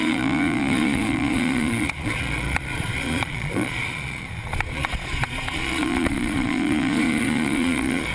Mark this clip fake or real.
fake